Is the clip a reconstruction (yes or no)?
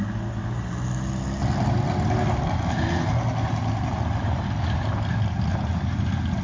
no